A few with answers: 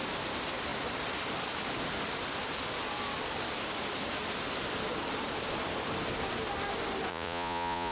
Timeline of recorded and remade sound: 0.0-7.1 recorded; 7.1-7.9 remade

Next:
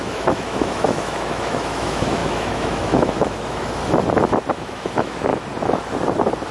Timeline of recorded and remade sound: 0.0-3.8 remade; 3.8-4.5 recorded; 4.5-5.3 remade; 5.3-6.5 recorded

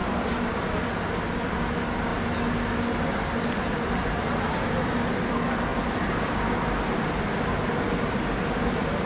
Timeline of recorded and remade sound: 0.0-5.7 recorded; 5.7-6.3 remade; 6.3-9.1 recorded

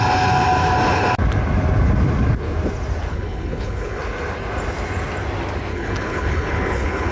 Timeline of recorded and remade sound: 0.0-3.1 recorded; 3.1-4.0 remade; 4.0-5.7 recorded; 5.7-7.1 remade

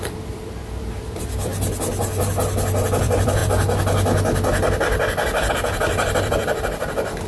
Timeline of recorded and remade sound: 0.0-1.5 remade; 1.5-3.0 recorded; 3.0-3.4 remade; 3.4-5.5 recorded; 5.5-7.3 remade

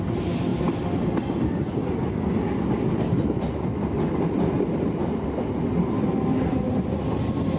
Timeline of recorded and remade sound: 0.0-7.6 recorded

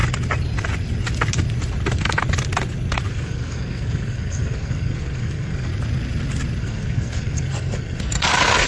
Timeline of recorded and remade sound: 0.0-3.1 recorded; 3.1-5.7 remade; 5.7-6.6 recorded; 6.6-8.7 remade